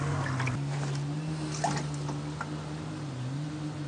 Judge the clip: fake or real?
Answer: real